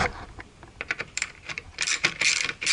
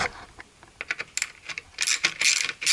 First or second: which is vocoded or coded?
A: first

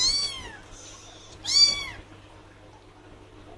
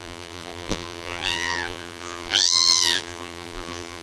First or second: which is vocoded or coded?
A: second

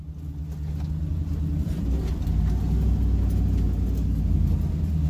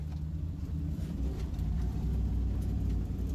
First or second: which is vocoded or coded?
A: second